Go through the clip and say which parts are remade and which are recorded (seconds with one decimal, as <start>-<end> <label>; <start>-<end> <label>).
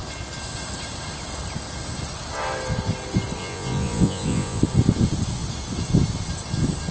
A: 0.0-3.4 recorded; 3.4-4.6 remade; 4.6-6.9 recorded